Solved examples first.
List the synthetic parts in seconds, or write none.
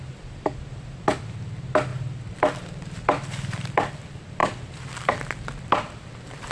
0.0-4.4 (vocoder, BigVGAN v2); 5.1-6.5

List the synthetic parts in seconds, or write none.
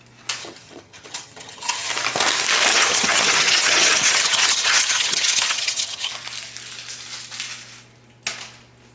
0.4-1.9 (vocoder, HiFi-GAN); 2.7-6.1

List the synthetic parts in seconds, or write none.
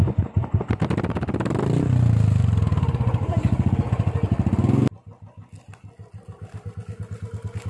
none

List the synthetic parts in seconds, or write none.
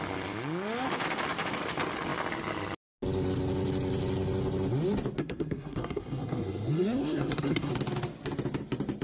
5.2-7.7 (codec, SNAC)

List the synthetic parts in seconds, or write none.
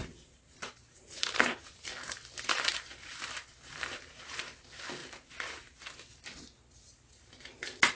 0.0-1.9 (vocoder, BigVGAN v2); 2.9-4.5; 5.0-5.8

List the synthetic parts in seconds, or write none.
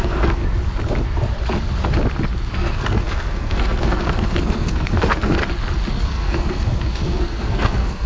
0.0-0.4 (codec, SNAC); 2.5-5.4; 5.9-8.1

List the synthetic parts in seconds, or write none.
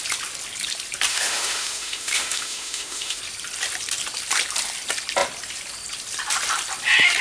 1.1-3.2 (autoencoder, DAC-VAE)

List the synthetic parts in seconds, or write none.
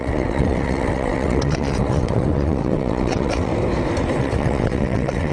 0.0-3.5 (vocoder, WaveNeXt); 4.2-5.3